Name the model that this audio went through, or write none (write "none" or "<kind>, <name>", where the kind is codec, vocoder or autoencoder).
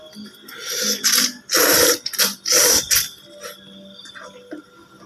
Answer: none